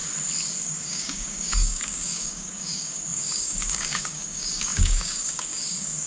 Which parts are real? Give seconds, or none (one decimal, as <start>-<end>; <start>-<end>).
0.0-0.6